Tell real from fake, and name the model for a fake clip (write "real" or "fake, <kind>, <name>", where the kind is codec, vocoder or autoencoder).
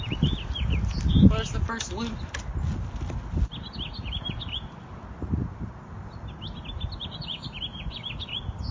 real